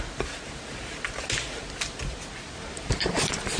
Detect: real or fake real